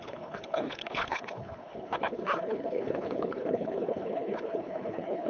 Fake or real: fake